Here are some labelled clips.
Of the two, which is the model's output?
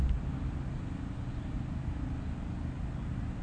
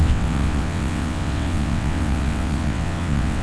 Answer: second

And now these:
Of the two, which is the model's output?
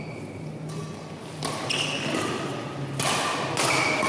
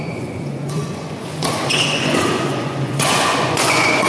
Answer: second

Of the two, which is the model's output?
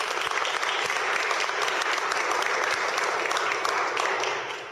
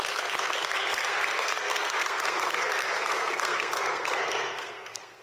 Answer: second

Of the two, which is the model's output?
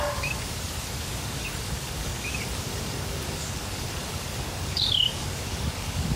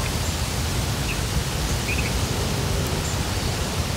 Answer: first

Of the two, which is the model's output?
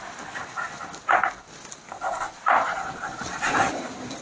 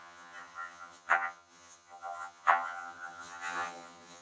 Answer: second